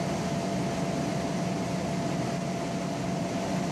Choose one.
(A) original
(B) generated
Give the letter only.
A